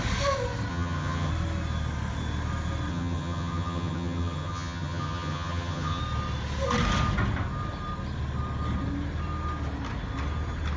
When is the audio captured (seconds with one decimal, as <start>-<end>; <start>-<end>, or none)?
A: 0.0-0.7; 1.3-2.9; 6.0-10.8